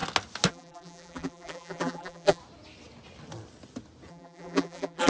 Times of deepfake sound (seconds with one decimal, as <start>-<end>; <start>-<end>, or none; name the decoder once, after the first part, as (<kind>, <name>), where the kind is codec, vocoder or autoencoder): 0.5-2.4 (vocoder, BigVGAN v2); 4.1-5.1